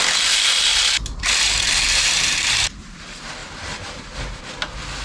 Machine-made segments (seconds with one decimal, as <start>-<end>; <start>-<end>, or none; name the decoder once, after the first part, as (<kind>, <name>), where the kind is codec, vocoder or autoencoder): 0.7-2.7 (vocoder, BigVGAN v2)